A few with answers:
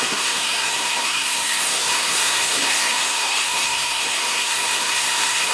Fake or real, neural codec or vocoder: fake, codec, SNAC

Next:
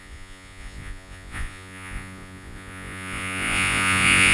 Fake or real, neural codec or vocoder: fake, vocoder, Vocos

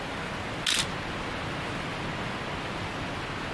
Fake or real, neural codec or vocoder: real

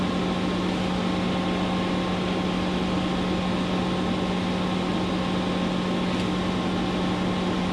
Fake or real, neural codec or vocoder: real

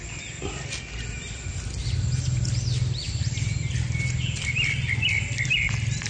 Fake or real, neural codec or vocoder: real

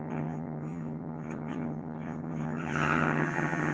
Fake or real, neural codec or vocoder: fake, vocoder, HiFi-GAN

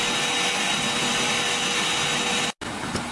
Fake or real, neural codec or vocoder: real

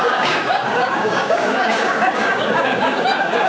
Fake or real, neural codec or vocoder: fake, codec, DAC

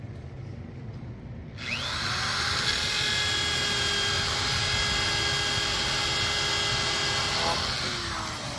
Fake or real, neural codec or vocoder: real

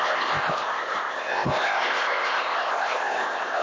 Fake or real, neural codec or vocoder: fake, codec, ZipCodec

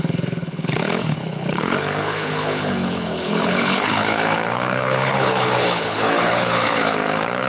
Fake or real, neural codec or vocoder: fake, codec, HILCodec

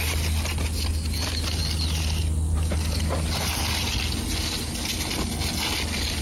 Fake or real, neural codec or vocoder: real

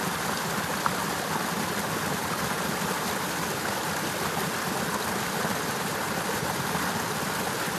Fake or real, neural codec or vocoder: real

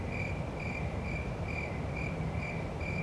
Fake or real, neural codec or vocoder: fake, vocoder, BigVGAN v2